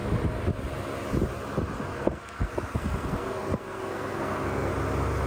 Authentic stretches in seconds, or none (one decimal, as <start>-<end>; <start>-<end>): 0.0-1.9; 4.7-5.3